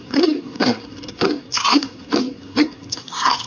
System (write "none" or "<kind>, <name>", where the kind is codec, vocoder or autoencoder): codec, SNAC